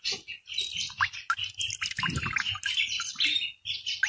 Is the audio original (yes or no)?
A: yes